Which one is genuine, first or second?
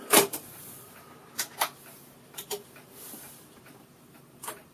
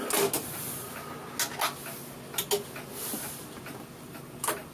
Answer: second